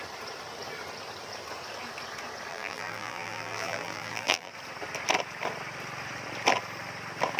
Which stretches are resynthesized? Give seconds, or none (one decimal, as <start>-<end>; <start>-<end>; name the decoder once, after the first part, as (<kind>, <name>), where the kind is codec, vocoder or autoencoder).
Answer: 2.5-4.5 (vocoder, BigVGAN v2)